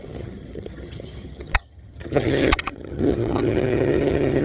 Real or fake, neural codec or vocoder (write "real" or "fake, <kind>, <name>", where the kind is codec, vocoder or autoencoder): fake, vocoder, HiFi-GAN